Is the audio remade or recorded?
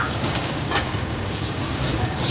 remade